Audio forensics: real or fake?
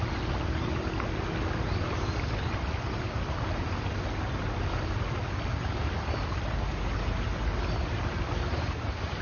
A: real